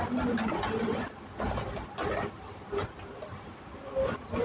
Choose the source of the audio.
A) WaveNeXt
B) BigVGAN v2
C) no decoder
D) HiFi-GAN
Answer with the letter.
C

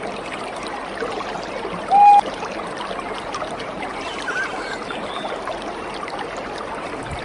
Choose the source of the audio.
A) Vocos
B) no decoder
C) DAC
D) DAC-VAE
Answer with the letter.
B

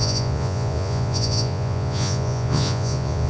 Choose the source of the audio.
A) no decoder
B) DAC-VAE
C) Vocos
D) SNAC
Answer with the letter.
C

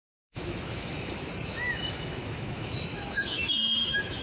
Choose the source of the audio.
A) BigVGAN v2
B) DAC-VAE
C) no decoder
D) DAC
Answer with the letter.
B